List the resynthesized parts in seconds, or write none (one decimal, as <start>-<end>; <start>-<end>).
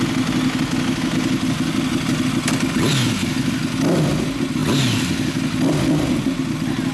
none